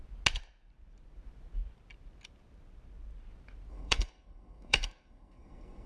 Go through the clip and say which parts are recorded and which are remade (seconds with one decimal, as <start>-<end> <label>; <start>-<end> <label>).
0.0-3.7 recorded; 3.7-5.9 remade